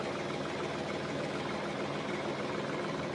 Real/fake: real